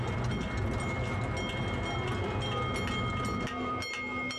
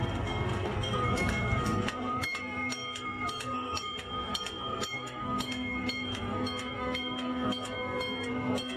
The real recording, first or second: first